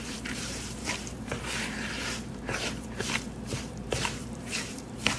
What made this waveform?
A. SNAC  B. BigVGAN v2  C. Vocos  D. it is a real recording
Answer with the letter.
B